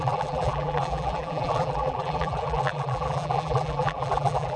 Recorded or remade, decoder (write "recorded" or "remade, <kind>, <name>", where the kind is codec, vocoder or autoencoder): remade, vocoder, BigVGAN v2